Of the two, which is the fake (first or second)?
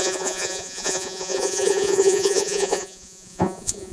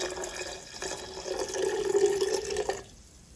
first